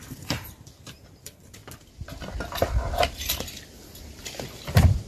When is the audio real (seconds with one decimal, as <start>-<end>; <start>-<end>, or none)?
1.6-4.2